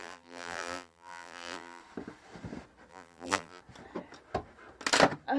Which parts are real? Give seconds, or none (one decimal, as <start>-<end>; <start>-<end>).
1.8-2.9; 3.6-5.4